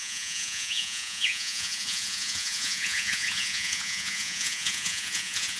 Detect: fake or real fake